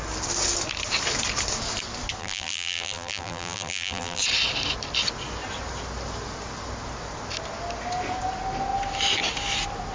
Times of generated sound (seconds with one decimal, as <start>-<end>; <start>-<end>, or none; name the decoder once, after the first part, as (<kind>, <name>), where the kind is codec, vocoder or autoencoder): 2.2-4.2 (vocoder, BigVGAN v2)